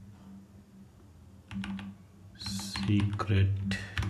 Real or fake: real